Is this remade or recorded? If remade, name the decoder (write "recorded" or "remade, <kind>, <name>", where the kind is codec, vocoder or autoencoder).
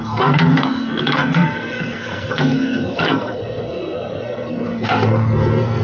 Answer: remade, codec, SNAC